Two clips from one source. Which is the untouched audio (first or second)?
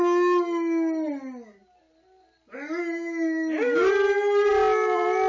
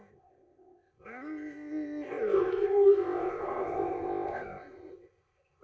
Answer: first